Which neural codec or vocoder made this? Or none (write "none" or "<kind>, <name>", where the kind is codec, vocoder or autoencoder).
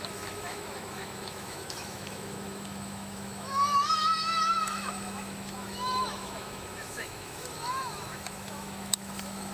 autoencoder, DAC-VAE